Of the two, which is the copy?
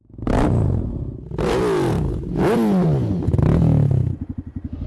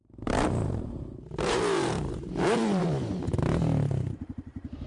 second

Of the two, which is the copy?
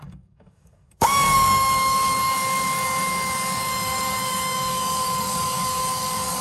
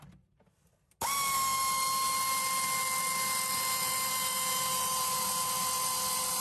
first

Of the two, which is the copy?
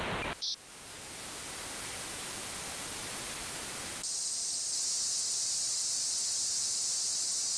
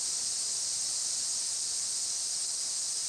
second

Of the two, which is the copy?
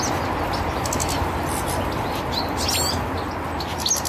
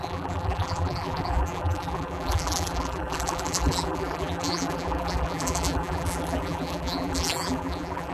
second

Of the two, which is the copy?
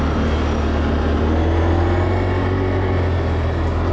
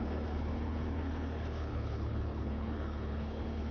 second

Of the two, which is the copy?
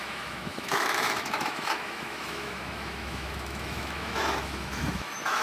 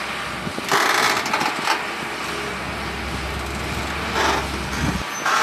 first